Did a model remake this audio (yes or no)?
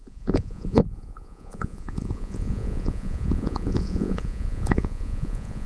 yes